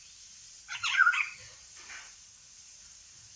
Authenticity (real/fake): fake